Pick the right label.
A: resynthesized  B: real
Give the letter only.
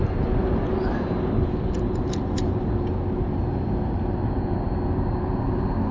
B